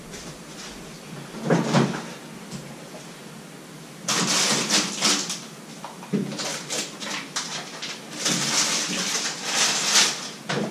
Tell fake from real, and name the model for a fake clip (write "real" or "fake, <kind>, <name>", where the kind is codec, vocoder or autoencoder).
real